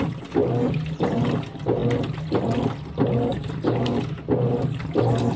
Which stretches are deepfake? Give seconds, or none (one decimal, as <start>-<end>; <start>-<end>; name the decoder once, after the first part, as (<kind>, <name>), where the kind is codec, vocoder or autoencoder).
3.3-4.0 (vocoder, BigVGAN v2)